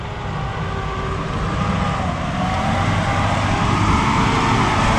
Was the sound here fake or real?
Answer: real